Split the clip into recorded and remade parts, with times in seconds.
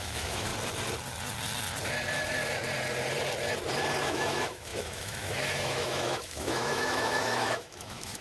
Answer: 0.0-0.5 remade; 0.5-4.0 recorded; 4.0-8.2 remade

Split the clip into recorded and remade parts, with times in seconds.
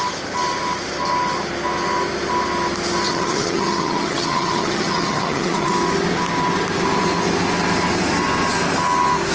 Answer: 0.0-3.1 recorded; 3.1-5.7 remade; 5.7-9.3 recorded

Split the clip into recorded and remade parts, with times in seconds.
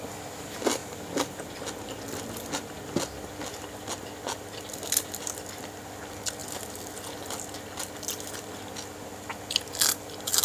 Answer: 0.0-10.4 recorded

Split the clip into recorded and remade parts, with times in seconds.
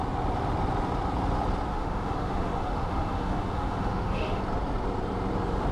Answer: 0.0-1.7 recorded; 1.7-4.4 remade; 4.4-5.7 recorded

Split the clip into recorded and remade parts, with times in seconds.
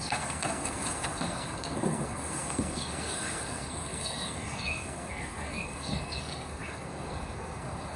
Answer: 0.0-8.0 remade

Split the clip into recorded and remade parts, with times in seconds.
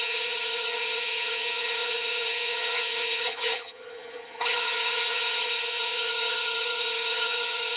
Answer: 0.0-7.8 remade